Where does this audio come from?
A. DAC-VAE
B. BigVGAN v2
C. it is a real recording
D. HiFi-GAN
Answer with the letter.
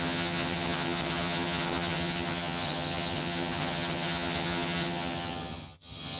D